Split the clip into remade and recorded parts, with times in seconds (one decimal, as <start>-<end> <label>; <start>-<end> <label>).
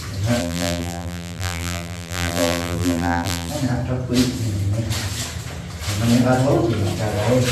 0.0-0.4 recorded; 0.4-3.5 remade; 3.5-7.5 recorded